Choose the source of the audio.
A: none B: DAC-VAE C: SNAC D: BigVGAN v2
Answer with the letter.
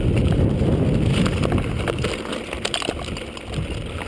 A